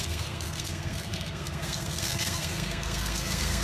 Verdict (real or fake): fake